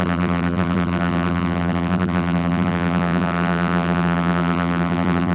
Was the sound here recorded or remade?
remade